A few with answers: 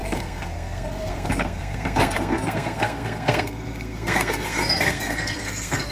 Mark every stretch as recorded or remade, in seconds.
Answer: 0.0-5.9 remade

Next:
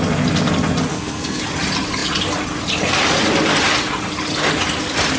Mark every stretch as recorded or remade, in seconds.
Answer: 0.0-0.9 recorded; 0.9-1.4 remade; 1.4-5.2 recorded

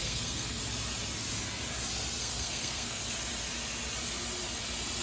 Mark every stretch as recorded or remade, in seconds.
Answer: 0.0-0.6 remade; 0.6-2.2 recorded; 2.2-3.0 remade; 3.0-5.0 recorded

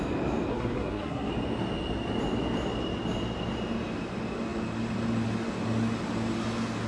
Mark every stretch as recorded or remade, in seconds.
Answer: 0.0-0.5 recorded; 0.5-1.3 remade; 1.3-6.9 recorded

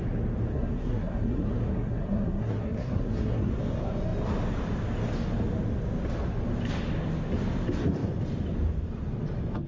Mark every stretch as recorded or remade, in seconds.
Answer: 0.0-0.5 recorded; 0.5-3.5 remade; 3.5-9.7 recorded

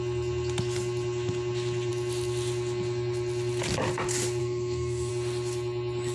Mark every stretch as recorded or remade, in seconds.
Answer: 0.0-4.4 recorded; 4.4-5.1 remade; 5.1-6.1 recorded